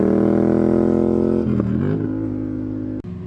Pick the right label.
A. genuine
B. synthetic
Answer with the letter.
A